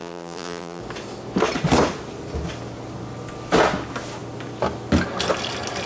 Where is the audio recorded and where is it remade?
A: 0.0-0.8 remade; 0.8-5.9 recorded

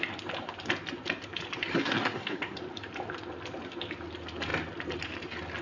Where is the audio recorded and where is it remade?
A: 0.0-1.7 recorded; 1.7-2.6 remade; 2.6-5.6 recorded

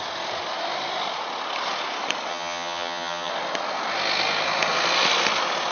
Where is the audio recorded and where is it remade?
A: 0.0-2.3 recorded; 2.3-3.3 remade; 3.3-5.7 recorded

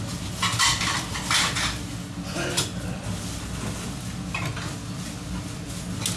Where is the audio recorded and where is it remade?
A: 0.0-6.2 recorded

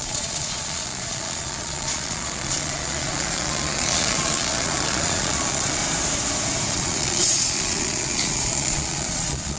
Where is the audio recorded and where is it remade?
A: 0.0-5.8 remade; 5.8-6.7 recorded; 6.7-9.6 remade

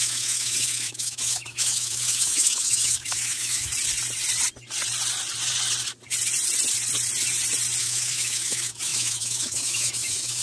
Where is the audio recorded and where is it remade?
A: 0.0-3.7 remade; 3.7-7.8 recorded; 7.8-10.4 remade

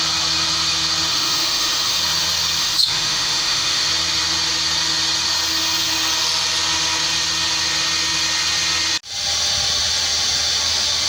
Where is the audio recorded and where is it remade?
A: 0.0-1.1 recorded; 1.1-2.0 remade; 2.0-2.6 recorded; 2.6-3.9 remade; 3.9-11.1 recorded